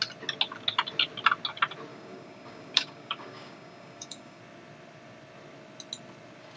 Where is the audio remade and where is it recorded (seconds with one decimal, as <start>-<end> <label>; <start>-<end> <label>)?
0.0-1.9 recorded; 1.9-4.4 remade; 4.4-6.6 recorded